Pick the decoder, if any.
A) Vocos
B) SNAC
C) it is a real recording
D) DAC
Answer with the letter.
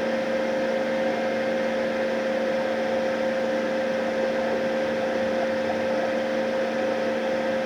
C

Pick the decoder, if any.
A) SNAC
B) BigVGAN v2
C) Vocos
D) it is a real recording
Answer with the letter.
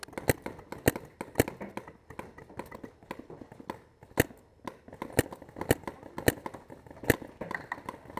D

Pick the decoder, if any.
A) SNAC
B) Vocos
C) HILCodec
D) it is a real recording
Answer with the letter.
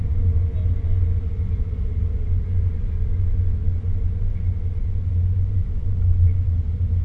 D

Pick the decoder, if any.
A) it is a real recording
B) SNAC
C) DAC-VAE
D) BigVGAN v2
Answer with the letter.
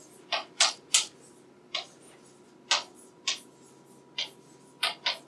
A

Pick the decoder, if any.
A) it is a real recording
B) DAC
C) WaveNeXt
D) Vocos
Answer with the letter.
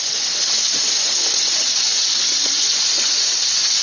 D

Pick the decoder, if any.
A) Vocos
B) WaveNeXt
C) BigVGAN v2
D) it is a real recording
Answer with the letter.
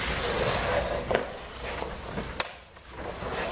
D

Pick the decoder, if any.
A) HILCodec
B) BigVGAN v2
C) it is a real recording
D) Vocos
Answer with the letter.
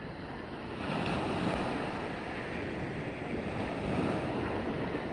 C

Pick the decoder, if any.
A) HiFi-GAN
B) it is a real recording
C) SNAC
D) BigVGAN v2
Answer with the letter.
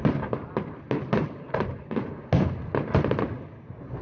B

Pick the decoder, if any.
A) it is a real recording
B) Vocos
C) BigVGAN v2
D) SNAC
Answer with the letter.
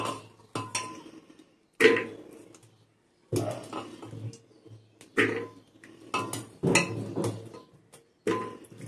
A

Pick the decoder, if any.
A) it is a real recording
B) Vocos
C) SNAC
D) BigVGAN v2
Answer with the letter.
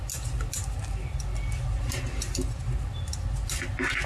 A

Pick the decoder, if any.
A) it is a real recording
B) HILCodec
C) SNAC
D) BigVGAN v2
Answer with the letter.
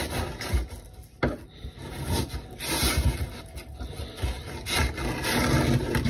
A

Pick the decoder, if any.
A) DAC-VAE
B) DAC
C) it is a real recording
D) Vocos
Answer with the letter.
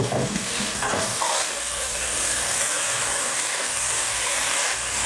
B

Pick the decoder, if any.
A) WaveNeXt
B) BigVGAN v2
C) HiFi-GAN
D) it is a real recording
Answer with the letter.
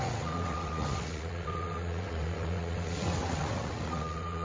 A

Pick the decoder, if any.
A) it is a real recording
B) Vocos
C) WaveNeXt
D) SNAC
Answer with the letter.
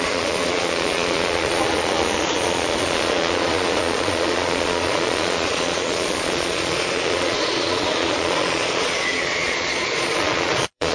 B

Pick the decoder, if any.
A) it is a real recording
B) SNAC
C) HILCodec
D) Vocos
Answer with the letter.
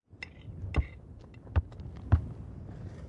A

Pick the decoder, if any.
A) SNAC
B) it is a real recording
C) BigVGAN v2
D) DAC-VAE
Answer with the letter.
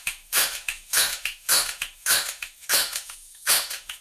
D